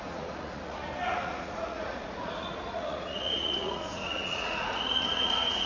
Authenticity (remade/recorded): remade